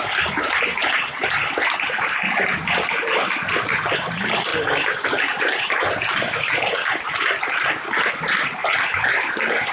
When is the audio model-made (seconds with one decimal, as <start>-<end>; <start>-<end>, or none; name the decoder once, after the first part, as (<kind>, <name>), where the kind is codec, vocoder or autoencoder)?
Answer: 2.5-3.8 (vocoder, BigVGAN v2); 4.5-8.1; 8.6-9.2